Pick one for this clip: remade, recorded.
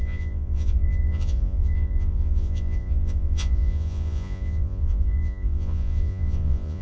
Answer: remade